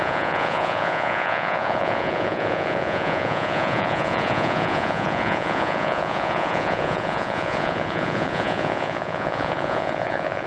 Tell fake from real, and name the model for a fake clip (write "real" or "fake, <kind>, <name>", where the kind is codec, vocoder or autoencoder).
fake, vocoder, Vocos